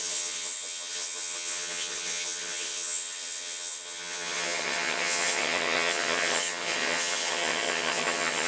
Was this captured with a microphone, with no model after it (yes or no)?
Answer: no